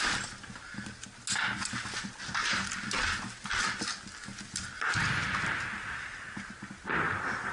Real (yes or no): yes